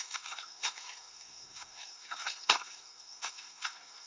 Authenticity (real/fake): fake